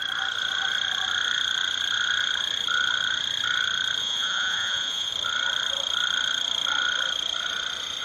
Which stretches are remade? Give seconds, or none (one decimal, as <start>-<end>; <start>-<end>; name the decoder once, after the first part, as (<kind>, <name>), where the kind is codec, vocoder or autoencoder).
4.0-5.1 (vocoder, Vocos)